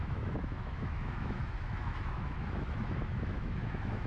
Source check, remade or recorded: remade